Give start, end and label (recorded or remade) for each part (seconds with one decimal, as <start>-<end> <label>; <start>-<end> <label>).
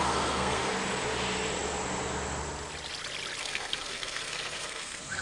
0.0-0.7 remade; 0.7-3.4 recorded; 3.4-5.2 remade